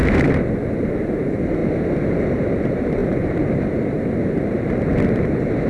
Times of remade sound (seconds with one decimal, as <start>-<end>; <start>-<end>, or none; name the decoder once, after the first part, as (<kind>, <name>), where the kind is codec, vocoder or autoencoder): 0.0-0.6 (vocoder, BigVGAN v2); 3.0-3.6